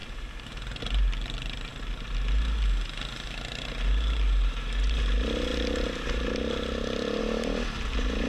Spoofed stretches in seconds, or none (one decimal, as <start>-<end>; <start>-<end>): none